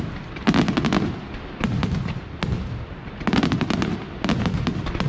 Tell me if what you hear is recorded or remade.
recorded